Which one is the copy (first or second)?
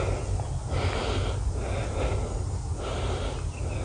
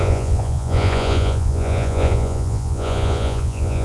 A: second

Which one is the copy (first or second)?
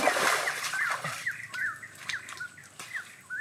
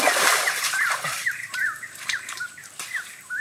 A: second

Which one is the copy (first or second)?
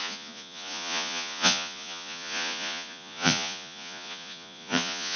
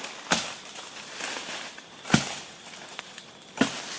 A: first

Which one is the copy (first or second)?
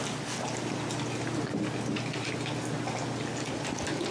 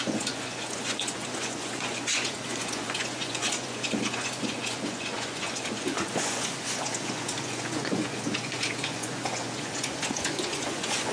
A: second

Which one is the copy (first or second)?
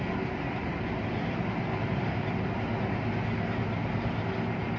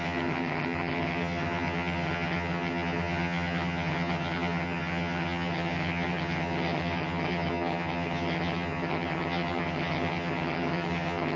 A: second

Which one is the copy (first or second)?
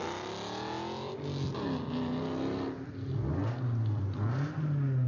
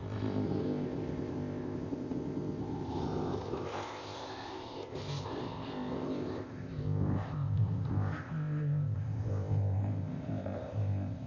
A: second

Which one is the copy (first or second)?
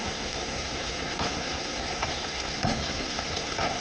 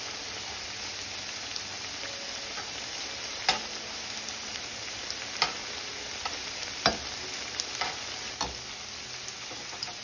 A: first